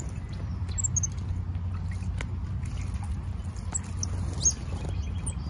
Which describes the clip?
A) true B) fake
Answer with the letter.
A